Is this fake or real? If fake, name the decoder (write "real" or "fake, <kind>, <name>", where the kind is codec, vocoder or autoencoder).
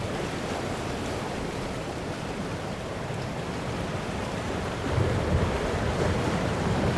real